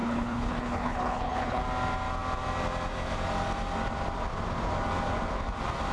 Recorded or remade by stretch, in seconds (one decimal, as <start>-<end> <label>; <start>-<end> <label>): 0.0-1.6 remade; 1.6-5.9 recorded